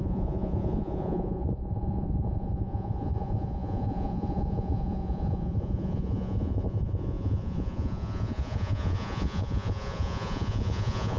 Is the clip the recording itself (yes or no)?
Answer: no